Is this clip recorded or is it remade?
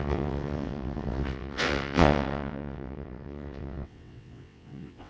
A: remade